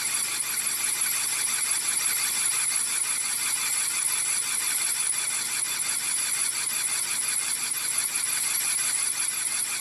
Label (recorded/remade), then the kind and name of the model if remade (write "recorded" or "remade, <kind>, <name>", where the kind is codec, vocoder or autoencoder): recorded